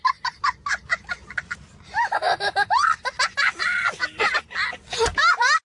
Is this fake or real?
real